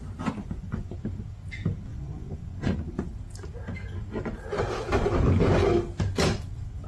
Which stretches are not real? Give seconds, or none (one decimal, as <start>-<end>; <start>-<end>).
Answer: 0.4-1.0; 1.9-3.1